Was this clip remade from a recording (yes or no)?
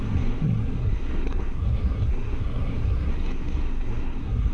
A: yes